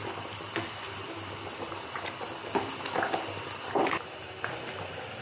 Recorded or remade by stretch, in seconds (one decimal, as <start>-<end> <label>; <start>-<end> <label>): 0.0-5.2 recorded

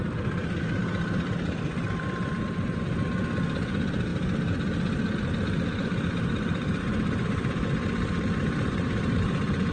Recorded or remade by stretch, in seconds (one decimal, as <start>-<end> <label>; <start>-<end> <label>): 0.0-4.1 remade; 4.1-5.3 recorded; 5.3-9.7 remade

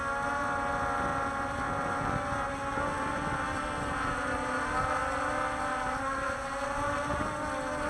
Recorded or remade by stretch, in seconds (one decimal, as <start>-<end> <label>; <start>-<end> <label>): 0.0-7.9 recorded